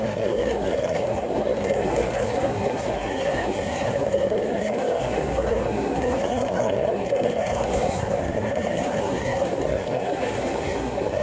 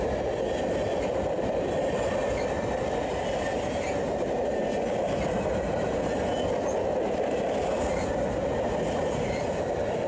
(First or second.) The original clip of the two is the second